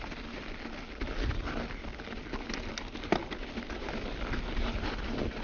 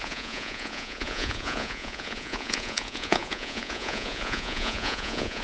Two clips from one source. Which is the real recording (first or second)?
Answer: first